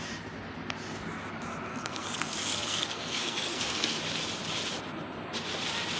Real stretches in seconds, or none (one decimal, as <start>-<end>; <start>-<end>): 0.0-1.7; 4.0-6.0